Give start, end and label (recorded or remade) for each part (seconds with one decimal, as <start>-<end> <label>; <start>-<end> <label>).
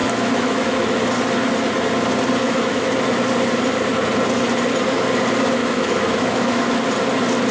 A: 0.0-1.0 remade; 1.0-2.4 recorded; 2.4-2.9 remade; 2.9-5.6 recorded; 5.6-6.8 remade; 6.8-7.5 recorded